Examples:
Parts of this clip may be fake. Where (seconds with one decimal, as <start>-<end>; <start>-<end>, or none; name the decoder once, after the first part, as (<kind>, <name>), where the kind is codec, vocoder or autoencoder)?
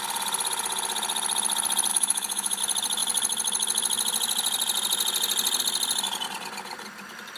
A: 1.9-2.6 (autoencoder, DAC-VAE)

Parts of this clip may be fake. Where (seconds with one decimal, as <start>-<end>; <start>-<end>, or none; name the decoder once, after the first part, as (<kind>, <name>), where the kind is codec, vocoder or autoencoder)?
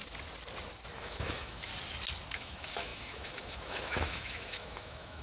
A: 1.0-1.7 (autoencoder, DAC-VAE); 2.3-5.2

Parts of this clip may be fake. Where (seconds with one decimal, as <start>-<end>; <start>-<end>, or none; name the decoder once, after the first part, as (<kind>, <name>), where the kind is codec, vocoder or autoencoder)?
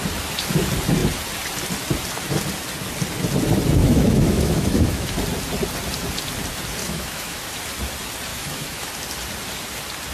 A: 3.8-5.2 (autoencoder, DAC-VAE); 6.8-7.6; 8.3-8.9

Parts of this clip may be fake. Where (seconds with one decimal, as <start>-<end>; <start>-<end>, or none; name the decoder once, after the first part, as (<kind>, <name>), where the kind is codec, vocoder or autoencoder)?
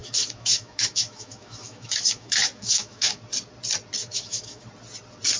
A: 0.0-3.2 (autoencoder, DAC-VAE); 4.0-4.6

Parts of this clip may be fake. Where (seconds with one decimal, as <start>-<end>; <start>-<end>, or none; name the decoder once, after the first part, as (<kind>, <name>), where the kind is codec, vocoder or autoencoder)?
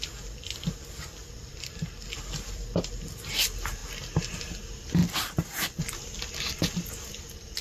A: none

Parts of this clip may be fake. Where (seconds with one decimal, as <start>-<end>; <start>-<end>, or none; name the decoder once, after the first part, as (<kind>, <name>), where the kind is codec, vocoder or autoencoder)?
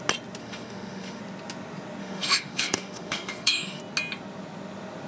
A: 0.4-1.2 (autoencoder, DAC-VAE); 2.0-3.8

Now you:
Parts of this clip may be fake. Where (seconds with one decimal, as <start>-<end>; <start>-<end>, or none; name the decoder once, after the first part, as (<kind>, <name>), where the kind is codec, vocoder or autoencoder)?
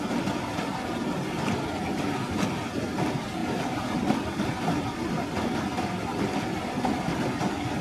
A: none